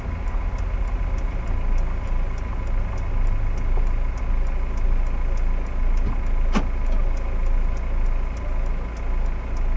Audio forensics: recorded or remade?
recorded